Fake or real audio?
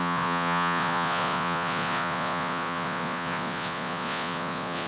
fake